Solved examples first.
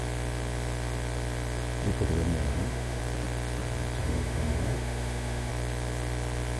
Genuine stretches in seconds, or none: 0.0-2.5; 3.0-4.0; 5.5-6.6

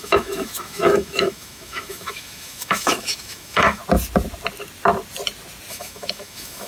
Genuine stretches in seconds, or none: 3.8-5.7

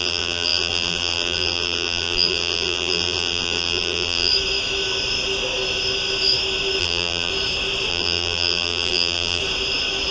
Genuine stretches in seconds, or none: 4.3-6.8; 7.3-7.9; 9.4-10.1

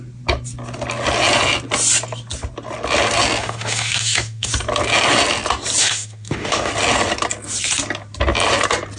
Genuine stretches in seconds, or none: 0.0-3.4; 4.5-5.8; 6.7-9.0

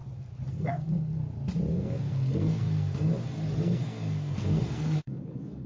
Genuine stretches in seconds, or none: 0.0-0.5; 1.1-1.7; 3.1-3.6

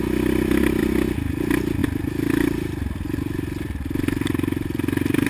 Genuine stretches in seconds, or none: 0.0-1.8

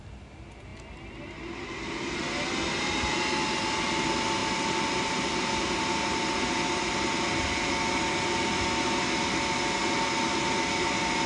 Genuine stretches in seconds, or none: 0.0-11.3